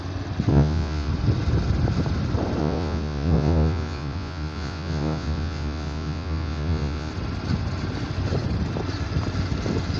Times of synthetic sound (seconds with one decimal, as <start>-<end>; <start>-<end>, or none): 0.5-1.1; 2.6-7.1